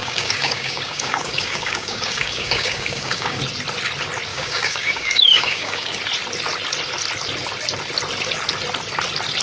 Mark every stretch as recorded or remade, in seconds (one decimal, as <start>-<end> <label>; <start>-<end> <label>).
0.0-3.4 remade; 3.4-4.3 recorded; 4.3-6.0 remade; 6.0-9.4 recorded